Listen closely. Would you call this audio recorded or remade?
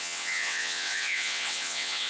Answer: remade